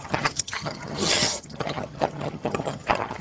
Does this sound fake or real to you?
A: fake